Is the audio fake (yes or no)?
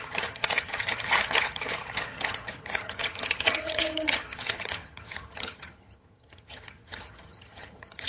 yes